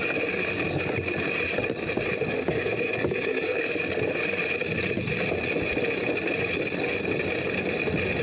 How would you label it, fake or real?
real